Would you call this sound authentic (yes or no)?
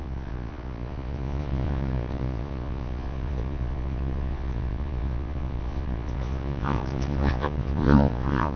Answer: no